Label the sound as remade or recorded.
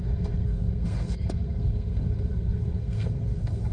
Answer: remade